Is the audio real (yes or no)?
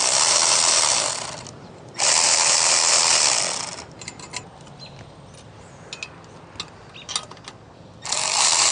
yes